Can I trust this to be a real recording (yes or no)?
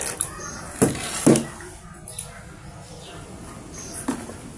yes